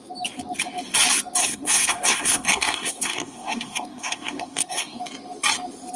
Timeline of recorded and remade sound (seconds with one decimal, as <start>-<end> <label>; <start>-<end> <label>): 0.0-1.4 recorded; 1.4-5.0 remade; 5.0-6.0 recorded